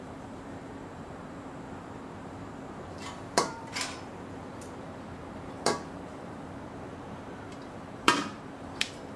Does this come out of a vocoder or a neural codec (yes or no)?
yes